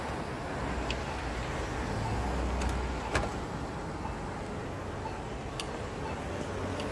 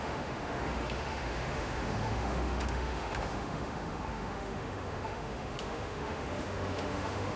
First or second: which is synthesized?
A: second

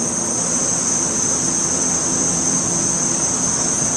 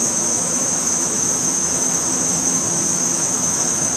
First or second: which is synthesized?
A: second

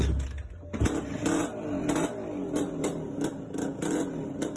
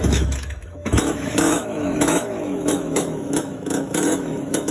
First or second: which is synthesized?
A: second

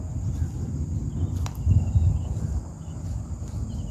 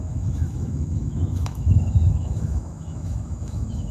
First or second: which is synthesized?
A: second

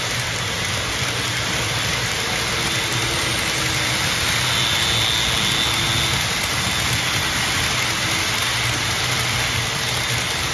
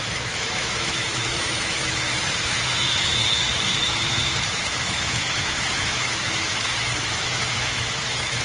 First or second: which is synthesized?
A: second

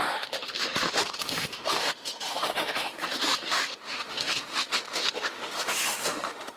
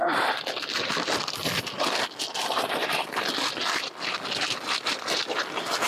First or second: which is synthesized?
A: first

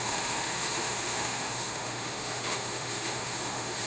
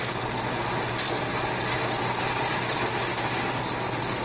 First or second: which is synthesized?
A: first